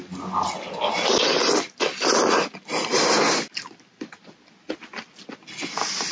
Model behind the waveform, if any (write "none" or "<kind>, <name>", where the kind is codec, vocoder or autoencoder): none